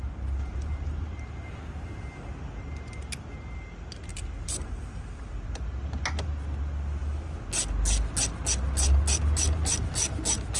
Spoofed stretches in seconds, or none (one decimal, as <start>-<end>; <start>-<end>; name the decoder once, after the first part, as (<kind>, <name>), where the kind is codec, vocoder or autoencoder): 0.5-1.5 (vocoder, BigVGAN v2); 4.1-6.0